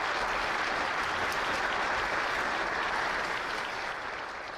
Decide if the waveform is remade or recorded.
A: recorded